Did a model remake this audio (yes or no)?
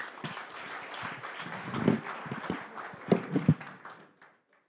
no